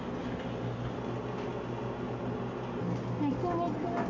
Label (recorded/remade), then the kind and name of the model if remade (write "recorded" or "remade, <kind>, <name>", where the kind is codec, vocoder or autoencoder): recorded